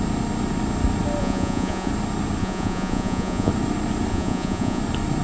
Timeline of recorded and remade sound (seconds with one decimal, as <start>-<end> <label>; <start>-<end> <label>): 0.0-1.2 recorded; 1.2-1.9 remade; 1.9-2.4 recorded; 2.4-3.5 remade; 3.5-4.1 recorded; 4.1-4.8 remade; 4.8-5.2 recorded